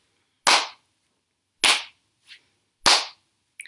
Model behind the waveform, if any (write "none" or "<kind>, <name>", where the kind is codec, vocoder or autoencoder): none